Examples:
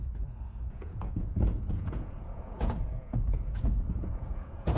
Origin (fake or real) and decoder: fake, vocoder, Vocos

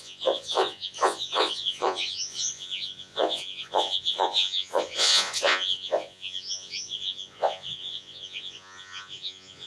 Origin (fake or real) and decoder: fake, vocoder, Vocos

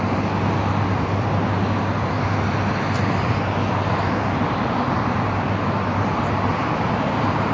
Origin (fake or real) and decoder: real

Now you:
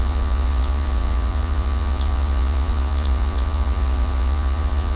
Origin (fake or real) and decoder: fake, vocoder, Vocos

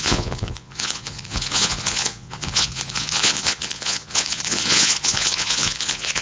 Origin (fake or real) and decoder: fake, vocoder, Vocos